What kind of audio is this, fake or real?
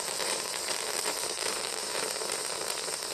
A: fake